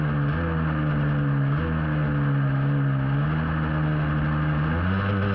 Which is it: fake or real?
real